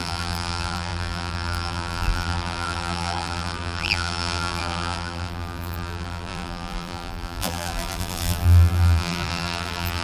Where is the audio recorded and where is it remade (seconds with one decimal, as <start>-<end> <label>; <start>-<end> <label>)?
0.0-10.0 remade